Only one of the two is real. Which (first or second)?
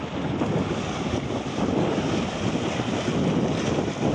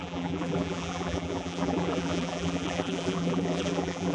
first